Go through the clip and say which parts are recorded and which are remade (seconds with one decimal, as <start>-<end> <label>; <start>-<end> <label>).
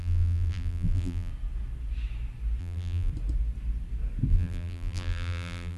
0.0-1.3 remade; 1.3-2.6 recorded; 2.6-3.1 remade; 3.1-4.3 recorded; 4.3-5.8 remade